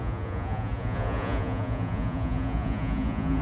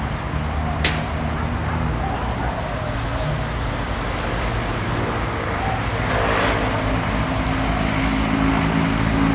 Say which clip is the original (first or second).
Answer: second